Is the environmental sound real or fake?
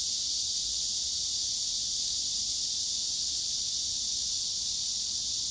real